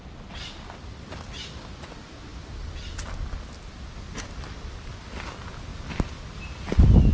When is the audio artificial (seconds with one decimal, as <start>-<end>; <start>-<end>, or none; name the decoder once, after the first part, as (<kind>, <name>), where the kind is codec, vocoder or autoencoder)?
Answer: none